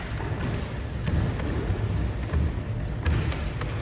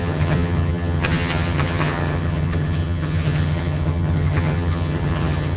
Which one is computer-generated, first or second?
second